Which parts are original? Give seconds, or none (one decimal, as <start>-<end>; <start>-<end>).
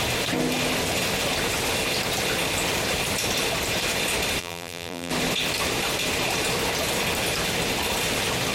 0.0-4.4; 5.1-8.5